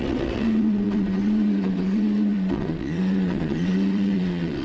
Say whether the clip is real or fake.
fake